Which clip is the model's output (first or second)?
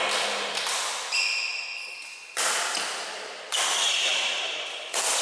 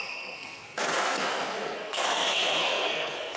second